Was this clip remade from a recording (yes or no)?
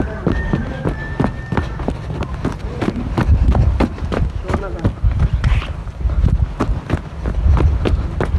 no